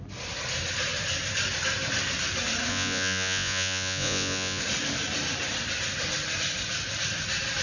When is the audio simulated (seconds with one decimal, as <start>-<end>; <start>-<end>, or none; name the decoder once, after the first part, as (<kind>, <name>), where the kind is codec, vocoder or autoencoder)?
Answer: 2.7-4.6 (vocoder, Vocos)